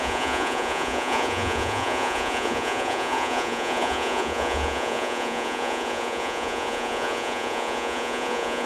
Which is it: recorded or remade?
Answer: remade